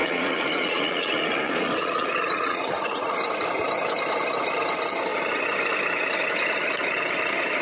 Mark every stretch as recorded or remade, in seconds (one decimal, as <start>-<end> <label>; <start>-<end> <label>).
0.0-3.1 remade; 3.1-7.6 recorded